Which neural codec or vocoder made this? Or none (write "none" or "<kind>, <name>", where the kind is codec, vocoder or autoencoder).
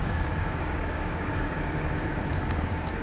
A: codec, DAC